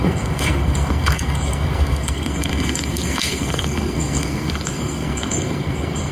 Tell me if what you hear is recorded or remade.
remade